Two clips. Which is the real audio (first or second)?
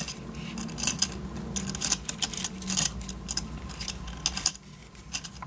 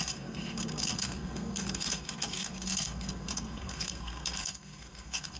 first